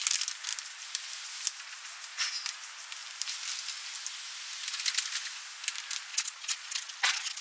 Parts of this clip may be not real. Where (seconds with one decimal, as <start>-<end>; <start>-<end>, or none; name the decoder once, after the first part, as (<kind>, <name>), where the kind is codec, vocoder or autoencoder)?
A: 6.1-7.4 (vocoder, Vocos)